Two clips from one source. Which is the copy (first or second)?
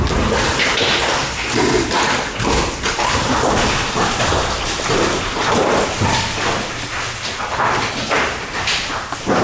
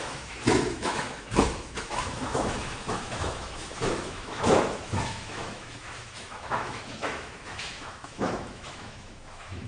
second